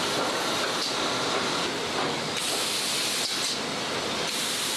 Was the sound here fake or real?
real